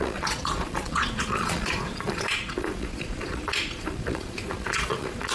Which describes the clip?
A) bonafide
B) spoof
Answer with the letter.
B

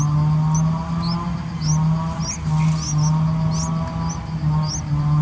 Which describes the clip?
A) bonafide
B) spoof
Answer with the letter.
A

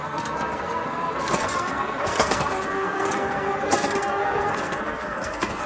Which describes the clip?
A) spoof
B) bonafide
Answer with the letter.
A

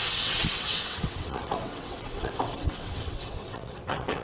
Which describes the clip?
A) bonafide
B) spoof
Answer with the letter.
B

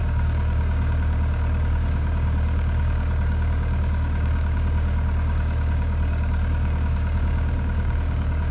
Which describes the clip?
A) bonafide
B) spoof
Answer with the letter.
B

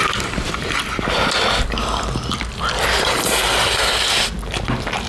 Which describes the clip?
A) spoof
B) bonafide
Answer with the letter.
B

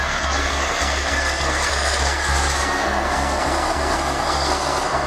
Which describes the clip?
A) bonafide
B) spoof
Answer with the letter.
B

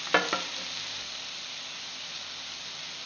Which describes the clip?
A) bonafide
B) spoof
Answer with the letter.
A